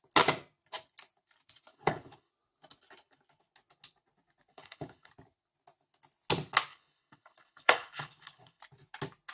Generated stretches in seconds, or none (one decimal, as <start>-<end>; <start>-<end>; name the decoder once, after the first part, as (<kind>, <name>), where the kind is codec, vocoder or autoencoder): 1.7-2.3 (codec, HILCodec); 4.5-5.1; 6.7-8.6